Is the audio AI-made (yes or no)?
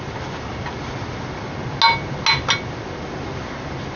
no